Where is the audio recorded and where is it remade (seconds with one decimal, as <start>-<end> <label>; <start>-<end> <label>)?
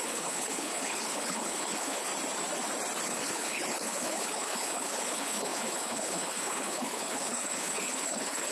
0.0-2.1 remade; 2.1-3.0 recorded; 3.0-8.5 remade